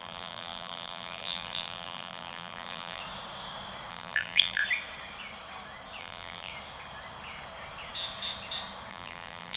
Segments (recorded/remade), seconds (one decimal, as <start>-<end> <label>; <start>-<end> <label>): 0.0-3.0 remade; 3.0-3.9 recorded; 3.9-4.6 remade; 4.6-6.0 recorded; 6.0-6.5 remade; 6.5-8.9 recorded; 8.9-9.6 remade